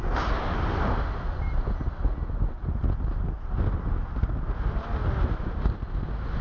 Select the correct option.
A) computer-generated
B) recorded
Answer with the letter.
B